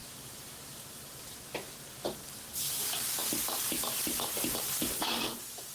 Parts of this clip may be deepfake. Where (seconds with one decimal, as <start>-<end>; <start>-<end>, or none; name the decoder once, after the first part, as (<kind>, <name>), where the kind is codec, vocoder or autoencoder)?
0.0-1.4 (vocoder, BigVGAN v2)